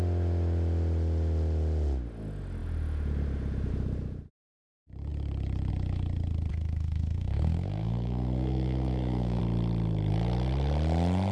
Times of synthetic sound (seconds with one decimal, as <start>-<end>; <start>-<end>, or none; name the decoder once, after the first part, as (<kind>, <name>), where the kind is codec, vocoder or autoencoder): 6.5-9.4 (codec, SNAC)